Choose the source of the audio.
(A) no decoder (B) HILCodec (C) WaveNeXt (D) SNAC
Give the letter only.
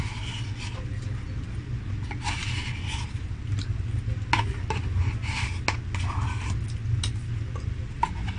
A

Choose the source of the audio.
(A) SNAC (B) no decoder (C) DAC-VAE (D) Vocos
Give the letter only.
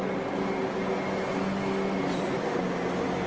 B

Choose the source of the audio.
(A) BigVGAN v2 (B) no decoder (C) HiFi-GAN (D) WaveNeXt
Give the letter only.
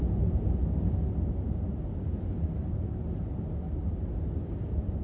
B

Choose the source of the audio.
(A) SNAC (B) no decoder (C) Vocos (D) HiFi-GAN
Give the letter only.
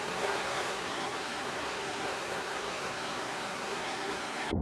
A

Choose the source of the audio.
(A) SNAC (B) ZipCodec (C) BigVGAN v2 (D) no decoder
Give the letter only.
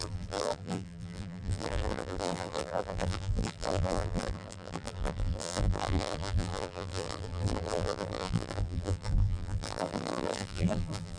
C